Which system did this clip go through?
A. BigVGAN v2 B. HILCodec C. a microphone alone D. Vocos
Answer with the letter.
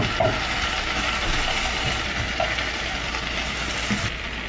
C